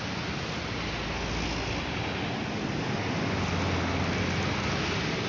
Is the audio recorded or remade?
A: recorded